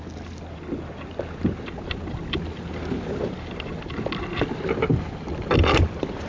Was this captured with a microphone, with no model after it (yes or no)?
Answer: yes